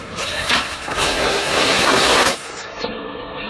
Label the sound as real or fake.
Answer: fake